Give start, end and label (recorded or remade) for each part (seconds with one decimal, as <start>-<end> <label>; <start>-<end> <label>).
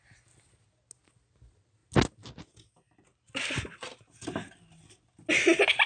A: 0.0-5.9 recorded